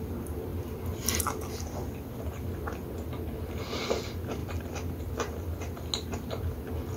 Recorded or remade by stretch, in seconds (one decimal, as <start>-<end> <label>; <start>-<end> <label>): 0.0-7.0 recorded